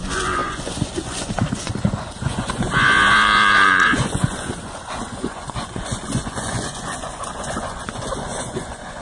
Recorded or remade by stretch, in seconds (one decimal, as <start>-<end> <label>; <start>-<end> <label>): 0.0-9.0 remade